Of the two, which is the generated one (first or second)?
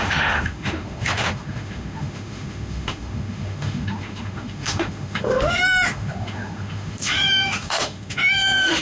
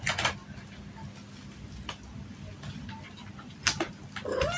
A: first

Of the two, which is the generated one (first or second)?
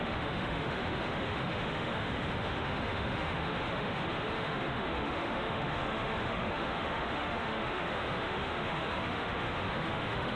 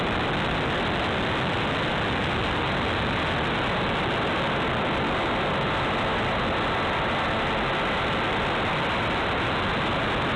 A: first